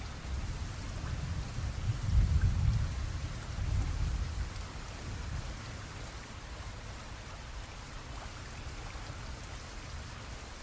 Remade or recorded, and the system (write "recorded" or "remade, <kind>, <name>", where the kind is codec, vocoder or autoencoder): recorded